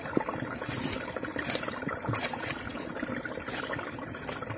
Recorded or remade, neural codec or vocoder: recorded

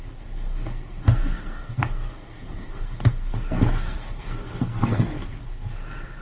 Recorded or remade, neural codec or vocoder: remade, codec, SNAC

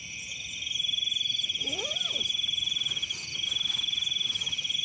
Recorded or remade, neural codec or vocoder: recorded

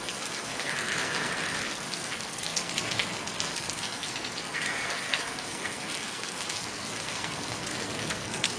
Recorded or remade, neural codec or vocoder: remade, codec, SNAC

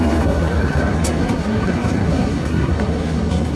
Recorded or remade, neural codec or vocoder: remade, codec, SNAC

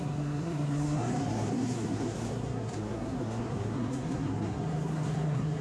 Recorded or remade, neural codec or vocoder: remade, codec, SNAC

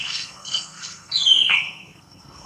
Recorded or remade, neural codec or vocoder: remade, codec, SNAC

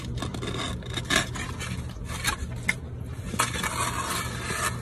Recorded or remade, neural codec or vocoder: recorded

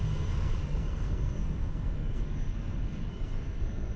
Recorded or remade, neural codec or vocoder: remade, codec, SNAC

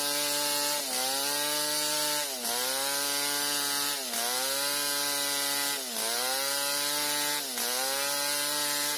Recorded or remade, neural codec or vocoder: recorded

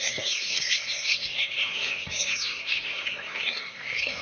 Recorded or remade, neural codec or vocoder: remade, codec, SNAC